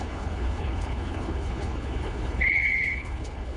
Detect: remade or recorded remade